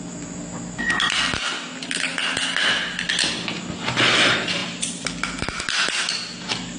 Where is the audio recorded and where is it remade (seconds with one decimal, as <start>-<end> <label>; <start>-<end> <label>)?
0.0-6.8 recorded